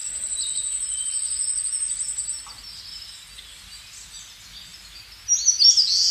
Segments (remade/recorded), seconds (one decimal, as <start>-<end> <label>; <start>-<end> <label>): 0.0-6.1 recorded